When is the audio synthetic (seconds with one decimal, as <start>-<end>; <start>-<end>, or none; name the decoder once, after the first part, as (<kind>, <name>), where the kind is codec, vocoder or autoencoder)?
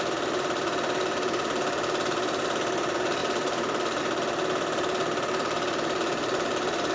none